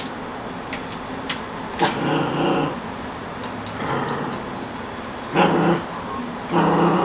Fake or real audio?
real